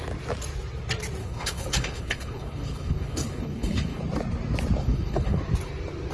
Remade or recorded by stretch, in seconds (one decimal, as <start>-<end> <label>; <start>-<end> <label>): 0.0-1.2 recorded; 1.2-4.0 remade; 4.0-4.8 recorded; 4.8-5.4 remade; 5.4-6.1 recorded